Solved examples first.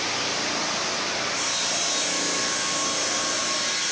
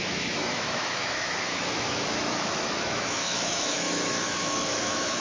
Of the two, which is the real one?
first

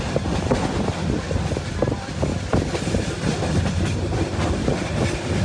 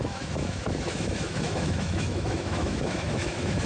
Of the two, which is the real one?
first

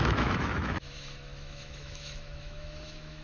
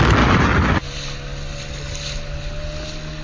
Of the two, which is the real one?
second